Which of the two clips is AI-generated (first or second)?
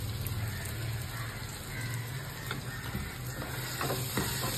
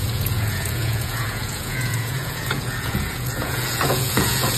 second